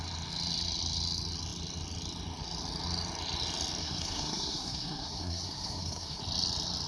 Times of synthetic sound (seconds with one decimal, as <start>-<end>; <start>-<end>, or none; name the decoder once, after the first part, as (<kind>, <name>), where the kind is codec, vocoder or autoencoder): 3.8-6.2 (codec, SNAC)